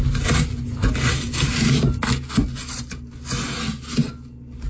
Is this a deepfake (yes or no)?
no